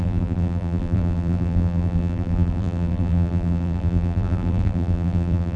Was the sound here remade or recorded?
remade